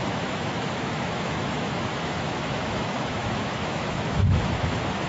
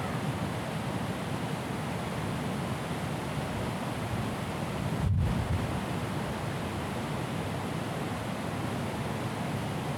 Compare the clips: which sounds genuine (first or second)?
second